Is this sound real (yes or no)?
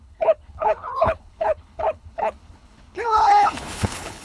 no